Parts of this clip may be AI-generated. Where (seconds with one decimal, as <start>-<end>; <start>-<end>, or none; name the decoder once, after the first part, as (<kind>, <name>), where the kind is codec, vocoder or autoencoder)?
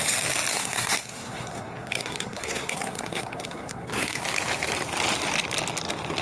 0.5-4.2 (codec, SNAC)